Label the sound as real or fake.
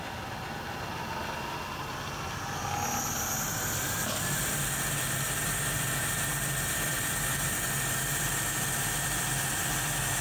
real